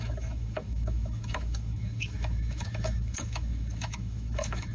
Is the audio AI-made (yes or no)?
yes